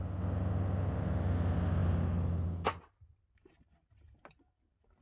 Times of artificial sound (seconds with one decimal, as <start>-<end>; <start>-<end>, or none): none